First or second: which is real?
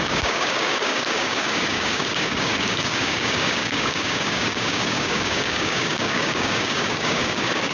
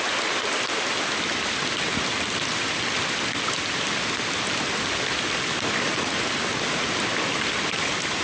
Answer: second